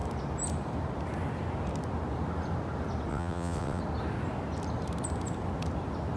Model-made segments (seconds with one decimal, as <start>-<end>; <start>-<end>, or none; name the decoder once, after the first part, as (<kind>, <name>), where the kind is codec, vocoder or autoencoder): 3.1-3.8 (vocoder, WaveNeXt)